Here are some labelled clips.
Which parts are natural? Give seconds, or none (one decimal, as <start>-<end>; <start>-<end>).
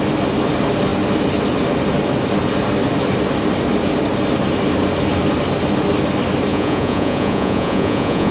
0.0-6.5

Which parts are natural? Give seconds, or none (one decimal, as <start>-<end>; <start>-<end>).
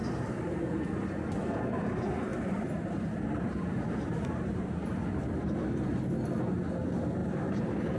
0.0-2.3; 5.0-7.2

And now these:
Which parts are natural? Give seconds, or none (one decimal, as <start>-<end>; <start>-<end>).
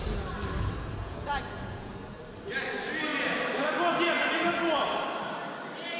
0.0-1.0; 1.9-6.0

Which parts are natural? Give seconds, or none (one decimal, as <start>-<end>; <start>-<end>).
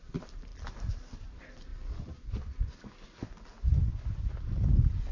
0.0-0.5; 1.1-5.1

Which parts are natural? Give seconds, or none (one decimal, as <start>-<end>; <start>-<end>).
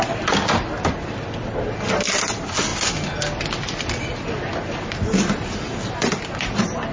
0.0-6.9